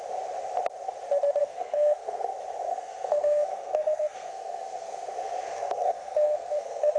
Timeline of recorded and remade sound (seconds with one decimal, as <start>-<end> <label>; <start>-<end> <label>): 0.0-1.4 recorded; 1.4-2.3 remade; 2.3-2.7 recorded; 2.7-7.0 remade